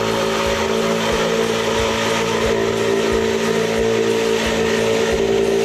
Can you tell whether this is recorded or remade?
recorded